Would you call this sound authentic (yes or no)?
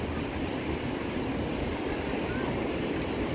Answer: yes